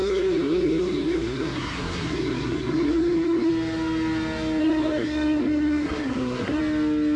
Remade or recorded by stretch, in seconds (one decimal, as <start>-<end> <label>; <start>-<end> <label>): 0.0-3.5 remade; 3.5-4.6 recorded; 4.6-6.6 remade; 6.6-7.2 recorded

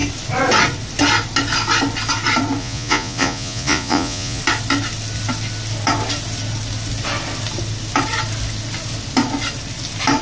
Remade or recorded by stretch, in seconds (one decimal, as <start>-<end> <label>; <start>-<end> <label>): 0.0-2.6 recorded; 2.6-4.4 remade; 4.4-10.2 recorded